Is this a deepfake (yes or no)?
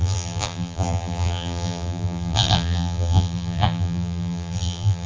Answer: yes